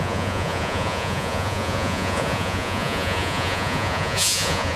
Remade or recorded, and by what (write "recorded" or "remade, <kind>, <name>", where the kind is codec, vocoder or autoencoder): remade, vocoder, Vocos